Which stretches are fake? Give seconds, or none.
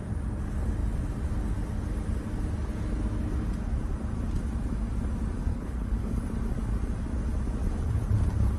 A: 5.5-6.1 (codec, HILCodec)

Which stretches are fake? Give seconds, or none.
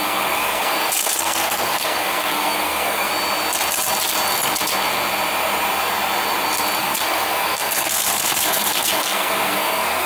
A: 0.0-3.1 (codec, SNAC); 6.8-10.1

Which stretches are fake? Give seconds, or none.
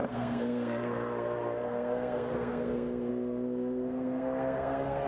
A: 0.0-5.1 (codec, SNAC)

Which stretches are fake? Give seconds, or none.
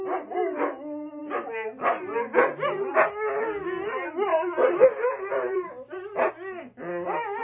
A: 4.3-6.3 (vocoder, BigVGAN v2)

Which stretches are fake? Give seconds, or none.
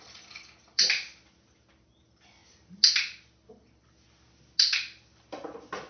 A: none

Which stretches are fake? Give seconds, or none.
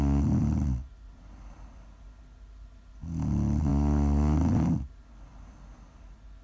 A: none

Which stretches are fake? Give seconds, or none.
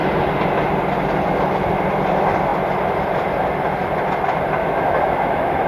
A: 4.6-5.7 (autoencoder, DAC-VAE)